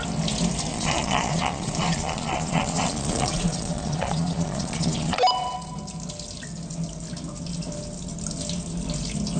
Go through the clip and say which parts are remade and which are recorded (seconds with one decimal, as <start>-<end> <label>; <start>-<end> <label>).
0.0-0.7 recorded; 0.7-5.2 remade; 5.2-9.4 recorded

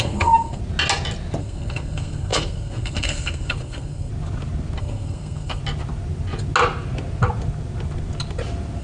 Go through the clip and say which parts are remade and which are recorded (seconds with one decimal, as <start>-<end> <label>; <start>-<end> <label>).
0.0-0.6 remade; 0.6-1.4 recorded; 1.4-4.1 remade; 4.1-4.8 recorded; 4.8-5.6 remade; 5.6-8.8 recorded

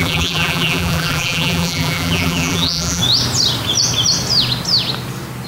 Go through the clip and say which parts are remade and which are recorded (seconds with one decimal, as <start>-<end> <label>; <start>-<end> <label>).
0.0-3.0 remade; 3.0-5.5 recorded

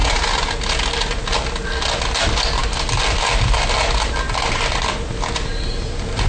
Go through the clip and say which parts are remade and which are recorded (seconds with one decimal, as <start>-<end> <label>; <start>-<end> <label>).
0.0-6.3 recorded

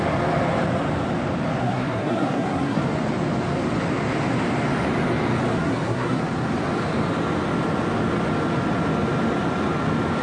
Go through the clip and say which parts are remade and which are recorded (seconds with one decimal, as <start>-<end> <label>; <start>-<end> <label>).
0.0-1.6 recorded; 1.6-2.8 remade; 2.8-5.5 recorded; 5.5-6.2 remade; 6.2-10.2 recorded

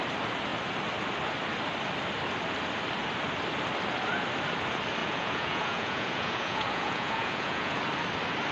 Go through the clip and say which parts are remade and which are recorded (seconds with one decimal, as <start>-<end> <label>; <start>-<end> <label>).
0.0-5.0 recorded; 5.0-7.8 remade; 7.8-8.5 recorded